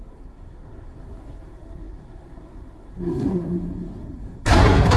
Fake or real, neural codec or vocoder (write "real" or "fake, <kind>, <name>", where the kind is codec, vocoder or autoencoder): fake, codec, SNAC